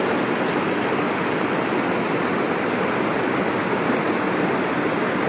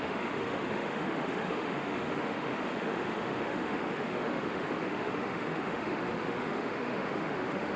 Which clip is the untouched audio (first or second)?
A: first